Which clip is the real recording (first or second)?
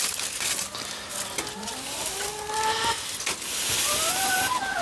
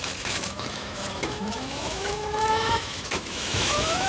first